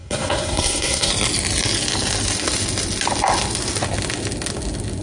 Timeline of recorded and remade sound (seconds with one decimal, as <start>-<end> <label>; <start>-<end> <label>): 0.0-1.1 remade; 1.1-5.0 recorded